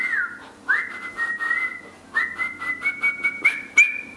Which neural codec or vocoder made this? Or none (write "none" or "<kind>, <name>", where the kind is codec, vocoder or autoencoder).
none